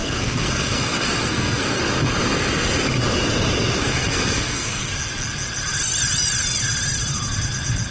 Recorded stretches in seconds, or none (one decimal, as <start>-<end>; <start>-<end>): 1.8-3.8; 4.9-7.9